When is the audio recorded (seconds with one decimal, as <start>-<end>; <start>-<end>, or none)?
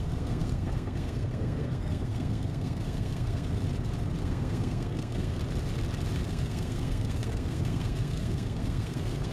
3.6-4.2; 5.4-6.3